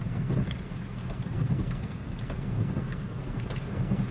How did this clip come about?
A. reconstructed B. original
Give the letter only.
A